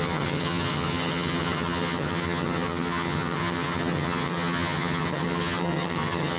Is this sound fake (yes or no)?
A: yes